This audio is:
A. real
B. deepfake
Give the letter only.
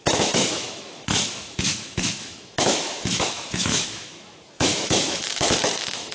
B